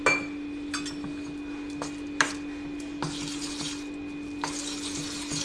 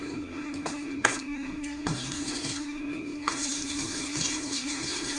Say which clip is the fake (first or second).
second